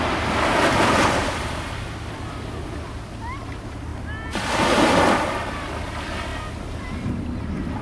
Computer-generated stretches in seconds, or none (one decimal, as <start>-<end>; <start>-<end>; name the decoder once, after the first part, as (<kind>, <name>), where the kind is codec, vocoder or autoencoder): none